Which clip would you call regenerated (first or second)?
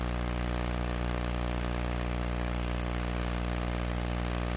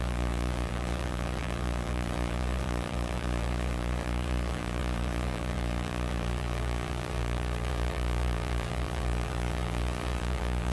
second